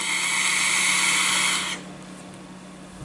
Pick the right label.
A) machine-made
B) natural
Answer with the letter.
B